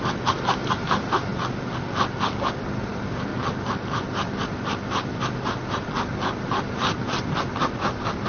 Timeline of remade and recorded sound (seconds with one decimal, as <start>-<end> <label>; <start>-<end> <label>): 0.0-8.3 recorded